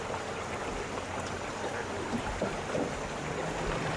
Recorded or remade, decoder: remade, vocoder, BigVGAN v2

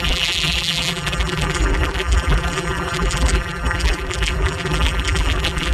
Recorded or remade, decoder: remade, vocoder, BigVGAN v2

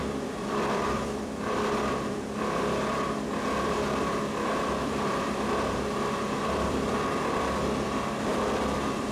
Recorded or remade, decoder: remade, vocoder, BigVGAN v2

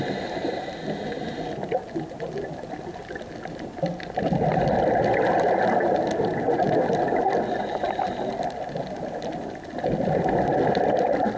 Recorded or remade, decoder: recorded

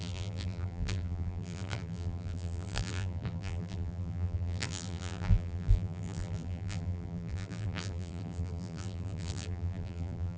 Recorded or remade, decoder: remade, vocoder, BigVGAN v2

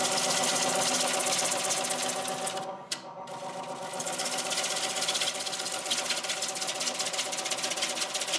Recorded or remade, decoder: recorded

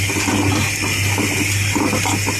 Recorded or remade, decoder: recorded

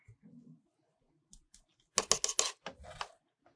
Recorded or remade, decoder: recorded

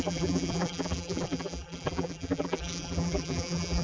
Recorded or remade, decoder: remade, vocoder, BigVGAN v2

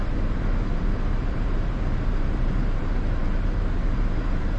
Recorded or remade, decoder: remade, vocoder, BigVGAN v2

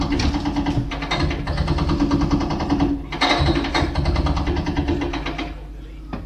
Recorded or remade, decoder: recorded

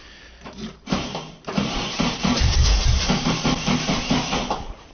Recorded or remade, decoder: remade, vocoder, BigVGAN v2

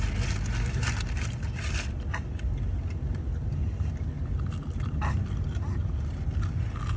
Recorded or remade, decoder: recorded